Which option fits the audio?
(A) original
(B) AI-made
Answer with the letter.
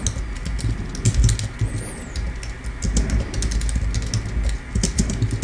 A